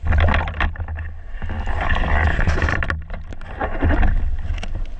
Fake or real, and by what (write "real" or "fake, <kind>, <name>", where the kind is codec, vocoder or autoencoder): real